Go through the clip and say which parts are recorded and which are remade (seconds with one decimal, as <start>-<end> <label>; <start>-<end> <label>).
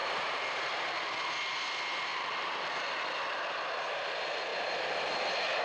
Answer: 0.0-0.8 remade; 0.8-2.1 recorded; 2.1-3.4 remade; 3.4-5.6 recorded